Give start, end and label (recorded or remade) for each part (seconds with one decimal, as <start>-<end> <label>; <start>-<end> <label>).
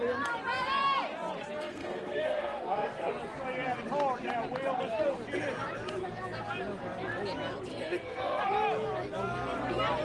0.0-1.6 recorded; 1.6-3.1 remade; 3.1-7.7 recorded; 7.7-8.4 remade; 8.4-10.0 recorded